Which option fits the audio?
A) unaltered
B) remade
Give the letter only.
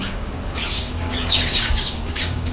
B